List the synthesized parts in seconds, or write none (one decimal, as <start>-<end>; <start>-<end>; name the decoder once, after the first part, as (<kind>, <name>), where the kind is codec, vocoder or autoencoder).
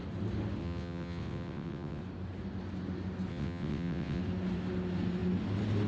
0.6-2.0 (vocoder, WaveNeXt); 3.3-4.2